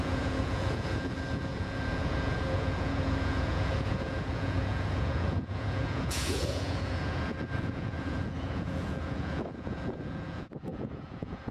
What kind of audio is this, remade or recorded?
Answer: remade